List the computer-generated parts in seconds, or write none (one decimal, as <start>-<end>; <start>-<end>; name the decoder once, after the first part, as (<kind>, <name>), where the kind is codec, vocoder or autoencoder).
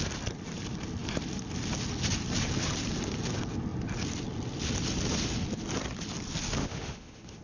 6.6-7.4 (autoencoder, DAC-VAE)